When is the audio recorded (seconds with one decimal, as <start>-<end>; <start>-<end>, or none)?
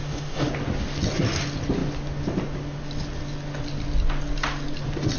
0.5-5.2